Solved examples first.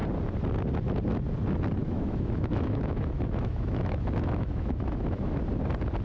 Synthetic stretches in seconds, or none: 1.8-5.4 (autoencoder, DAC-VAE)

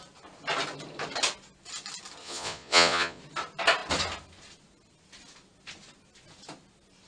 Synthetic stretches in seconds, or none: 2.2-3.2 (vocoder, Vocos)

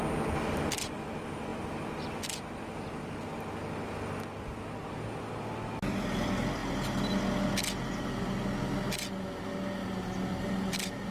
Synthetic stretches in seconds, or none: none

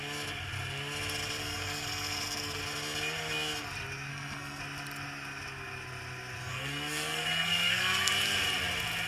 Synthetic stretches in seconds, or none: 1.4-2.6 (codec, SNAC); 4.1-4.6; 6.5-8.1